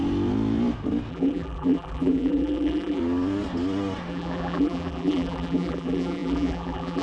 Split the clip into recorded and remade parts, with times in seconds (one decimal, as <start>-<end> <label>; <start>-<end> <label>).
0.0-1.1 recorded; 1.1-3.0 remade; 3.0-4.1 recorded; 4.1-7.0 remade